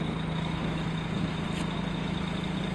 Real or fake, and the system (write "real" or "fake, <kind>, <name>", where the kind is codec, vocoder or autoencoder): real